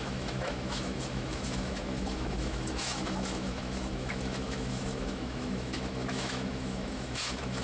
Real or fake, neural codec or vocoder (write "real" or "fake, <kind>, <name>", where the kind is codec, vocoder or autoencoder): fake, autoencoder, DAC-VAE